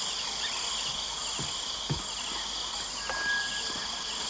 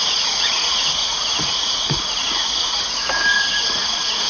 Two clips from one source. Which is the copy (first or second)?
second